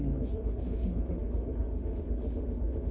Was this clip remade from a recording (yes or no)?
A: yes